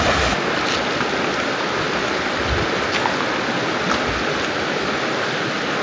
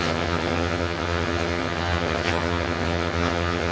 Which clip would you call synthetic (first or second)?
second